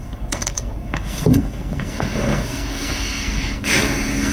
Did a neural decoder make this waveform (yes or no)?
yes